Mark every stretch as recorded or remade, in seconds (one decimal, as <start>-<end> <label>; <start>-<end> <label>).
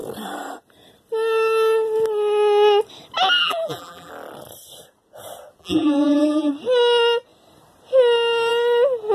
0.0-3.4 recorded; 3.4-4.1 remade; 4.1-5.6 recorded; 5.6-6.5 remade; 6.5-9.1 recorded